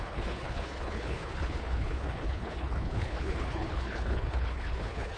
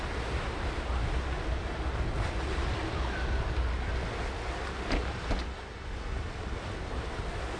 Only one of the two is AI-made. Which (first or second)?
first